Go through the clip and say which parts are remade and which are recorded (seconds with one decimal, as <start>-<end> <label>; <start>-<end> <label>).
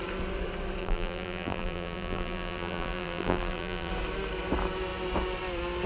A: 0.0-0.8 recorded; 0.8-3.9 remade; 3.9-5.9 recorded